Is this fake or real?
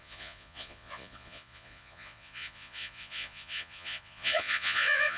fake